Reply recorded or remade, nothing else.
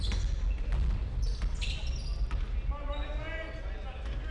recorded